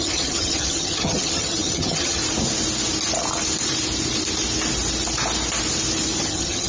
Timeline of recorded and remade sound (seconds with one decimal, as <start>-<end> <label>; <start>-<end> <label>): 0.0-2.2 remade; 2.2-6.2 recorded; 6.2-6.7 remade